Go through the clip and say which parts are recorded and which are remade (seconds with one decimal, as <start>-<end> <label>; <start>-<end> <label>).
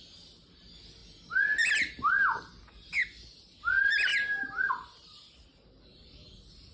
0.0-6.7 recorded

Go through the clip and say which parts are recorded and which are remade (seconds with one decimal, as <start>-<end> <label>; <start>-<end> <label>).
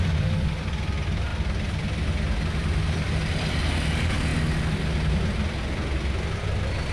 0.0-6.9 recorded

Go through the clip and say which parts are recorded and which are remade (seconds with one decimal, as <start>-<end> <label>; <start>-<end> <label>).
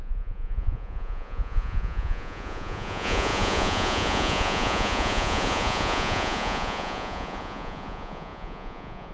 0.0-9.1 remade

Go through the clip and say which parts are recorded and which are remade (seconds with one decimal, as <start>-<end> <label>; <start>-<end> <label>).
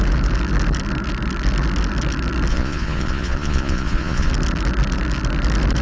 0.0-2.5 recorded; 2.5-4.3 remade; 4.3-5.8 recorded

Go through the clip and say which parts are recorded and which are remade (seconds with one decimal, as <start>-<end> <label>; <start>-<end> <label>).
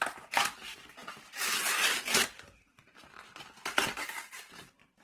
0.0-3.3 remade; 3.3-3.9 recorded; 3.9-5.0 remade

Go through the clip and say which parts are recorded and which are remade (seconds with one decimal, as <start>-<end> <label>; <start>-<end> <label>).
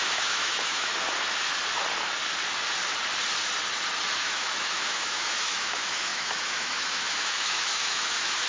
0.0-0.9 remade; 0.9-4.2 recorded; 4.2-8.5 remade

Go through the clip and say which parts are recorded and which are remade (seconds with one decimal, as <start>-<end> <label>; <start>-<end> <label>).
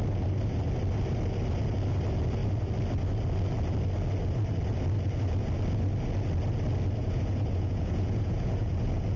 0.0-7.0 recorded; 7.0-9.2 remade